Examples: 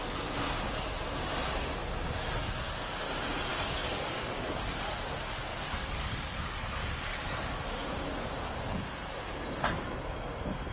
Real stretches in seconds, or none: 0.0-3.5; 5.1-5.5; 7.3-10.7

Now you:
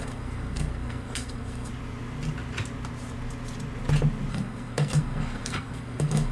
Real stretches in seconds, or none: 1.7-4.3

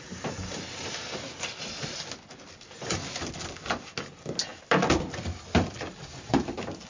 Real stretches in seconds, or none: 0.0-6.9